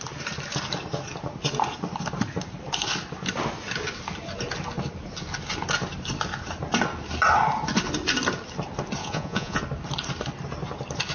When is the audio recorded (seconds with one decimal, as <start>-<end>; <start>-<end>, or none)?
0.0-9.0; 9.6-11.1